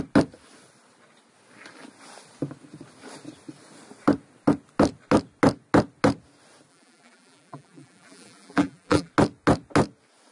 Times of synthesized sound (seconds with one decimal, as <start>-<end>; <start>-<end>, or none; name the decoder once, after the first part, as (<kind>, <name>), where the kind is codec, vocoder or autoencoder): 6.7-9.1 (vocoder, BigVGAN v2)